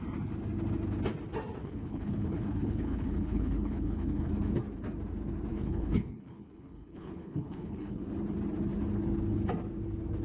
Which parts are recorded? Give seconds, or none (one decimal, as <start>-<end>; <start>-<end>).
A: 0.0-1.6; 4.3-5.5; 8.0-10.2